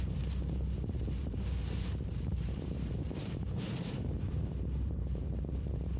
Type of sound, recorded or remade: remade